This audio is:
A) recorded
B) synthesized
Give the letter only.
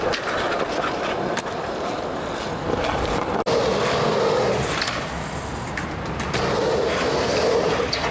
A